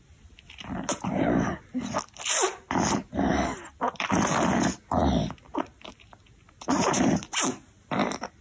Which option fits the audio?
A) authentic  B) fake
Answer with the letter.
A